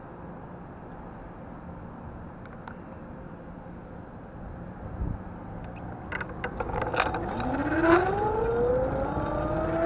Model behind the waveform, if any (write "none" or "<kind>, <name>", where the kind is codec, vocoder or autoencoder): none